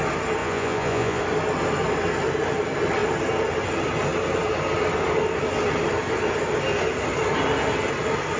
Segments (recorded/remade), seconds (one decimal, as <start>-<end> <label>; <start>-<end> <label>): 0.0-0.4 recorded; 0.4-1.2 remade; 1.2-8.4 recorded